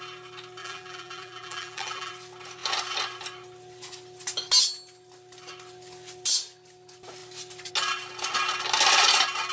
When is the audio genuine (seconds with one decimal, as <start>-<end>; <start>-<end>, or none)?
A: 0.0-0.6; 2.1-9.5